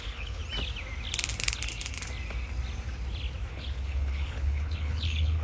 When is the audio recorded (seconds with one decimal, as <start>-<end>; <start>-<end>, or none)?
0.4-3.5